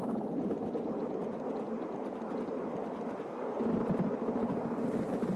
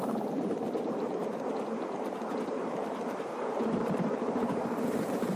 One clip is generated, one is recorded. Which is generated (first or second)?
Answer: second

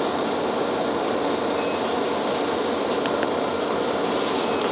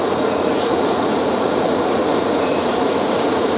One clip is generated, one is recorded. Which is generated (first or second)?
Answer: second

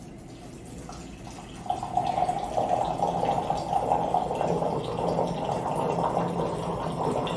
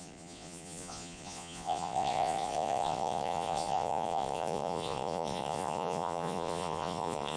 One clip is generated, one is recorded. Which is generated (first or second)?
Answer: second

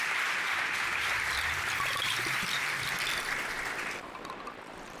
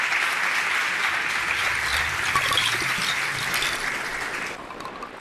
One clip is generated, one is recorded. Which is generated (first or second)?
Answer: first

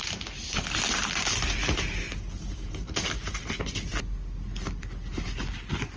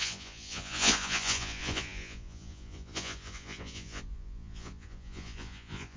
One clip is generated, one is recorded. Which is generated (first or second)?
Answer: second